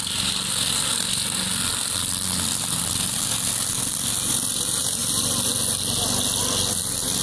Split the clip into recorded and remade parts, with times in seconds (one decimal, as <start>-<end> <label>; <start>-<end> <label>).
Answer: 0.0-7.2 recorded

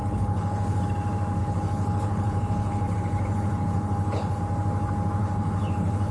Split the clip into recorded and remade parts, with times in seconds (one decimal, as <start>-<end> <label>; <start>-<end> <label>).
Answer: 0.0-0.8 remade; 0.8-1.4 recorded; 1.4-4.4 remade; 4.4-5.2 recorded; 5.2-6.1 remade